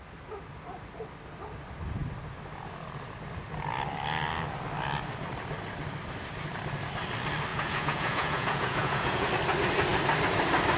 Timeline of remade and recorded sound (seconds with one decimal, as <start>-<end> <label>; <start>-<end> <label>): 0.0-7.5 recorded; 7.5-9.3 remade; 9.3-10.8 recorded